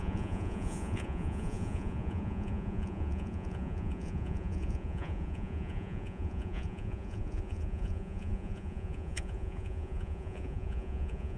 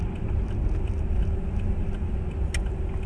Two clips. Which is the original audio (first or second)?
second